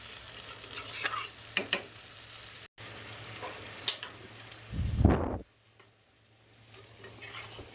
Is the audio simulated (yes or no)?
no